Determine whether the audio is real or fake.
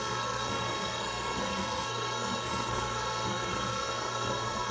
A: fake